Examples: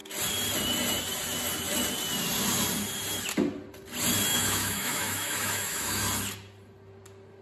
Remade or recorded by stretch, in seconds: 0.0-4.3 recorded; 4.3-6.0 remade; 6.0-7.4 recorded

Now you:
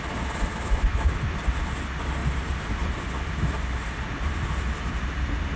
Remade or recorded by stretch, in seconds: 0.0-0.5 recorded; 0.5-1.1 remade; 1.1-5.6 recorded

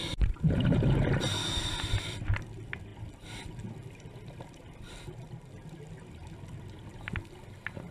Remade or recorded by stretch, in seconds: 0.0-7.9 recorded

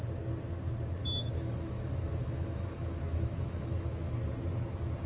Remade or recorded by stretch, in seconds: 0.0-1.0 recorded; 1.0-4.1 remade; 4.1-5.1 recorded

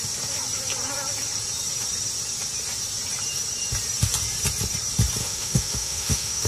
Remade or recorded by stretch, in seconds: 0.0-5.2 recorded; 5.2-6.5 remade

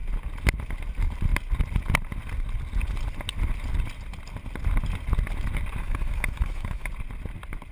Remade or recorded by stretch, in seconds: 0.0-5.8 recorded; 5.8-6.9 remade; 6.9-7.7 recorded

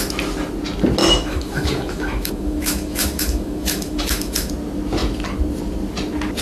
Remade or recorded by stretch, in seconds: 0.0-1.0 recorded; 1.0-4.5 remade; 4.5-6.4 recorded

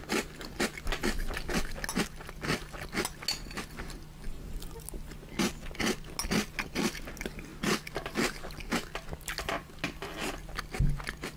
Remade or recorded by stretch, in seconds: 0.0-11.4 recorded